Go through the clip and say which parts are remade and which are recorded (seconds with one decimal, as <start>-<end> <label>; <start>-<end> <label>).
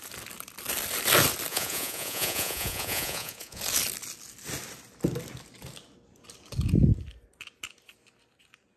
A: 0.0-1.5 recorded; 1.5-3.6 remade; 3.6-8.8 recorded